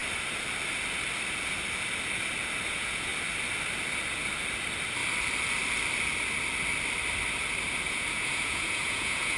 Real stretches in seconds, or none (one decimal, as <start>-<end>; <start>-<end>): 0.0-2.7; 3.1-7.9

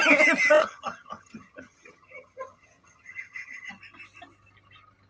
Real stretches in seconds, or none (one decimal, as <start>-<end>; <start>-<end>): 0.0-0.6; 3.7-5.1

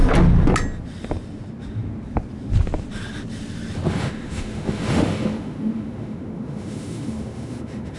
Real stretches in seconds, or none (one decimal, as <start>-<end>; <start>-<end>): 0.0-3.9

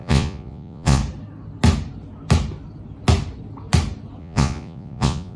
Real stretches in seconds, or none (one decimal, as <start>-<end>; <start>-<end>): 1.0-4.2

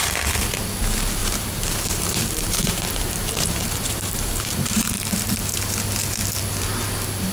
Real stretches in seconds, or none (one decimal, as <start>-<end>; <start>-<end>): 0.0-1.2; 5.4-7.3